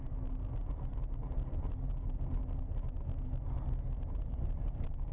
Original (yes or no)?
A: yes